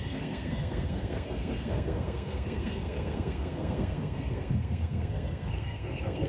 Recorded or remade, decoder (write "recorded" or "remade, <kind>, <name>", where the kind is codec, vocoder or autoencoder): remade, codec, SNAC